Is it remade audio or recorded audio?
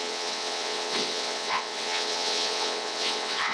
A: remade